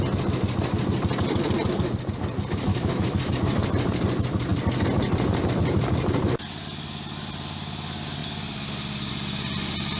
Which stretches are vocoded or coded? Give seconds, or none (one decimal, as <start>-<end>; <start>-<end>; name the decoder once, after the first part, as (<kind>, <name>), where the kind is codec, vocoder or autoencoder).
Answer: 2.7-3.3 (autoencoder, DAC-VAE)